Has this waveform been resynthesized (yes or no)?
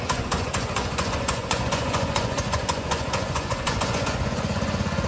yes